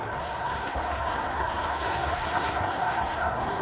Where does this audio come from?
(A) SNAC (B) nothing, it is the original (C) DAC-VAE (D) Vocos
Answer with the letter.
A